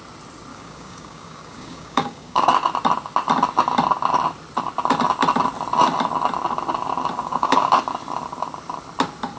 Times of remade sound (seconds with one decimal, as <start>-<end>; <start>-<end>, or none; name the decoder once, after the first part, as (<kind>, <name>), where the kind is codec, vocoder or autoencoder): 0.5-2.5 (codec, DAC); 7.2-7.8